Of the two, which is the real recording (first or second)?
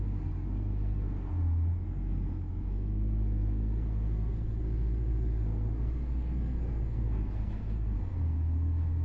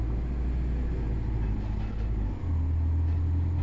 second